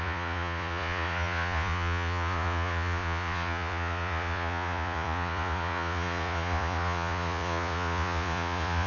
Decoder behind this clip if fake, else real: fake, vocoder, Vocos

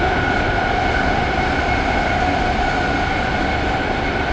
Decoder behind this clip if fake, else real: real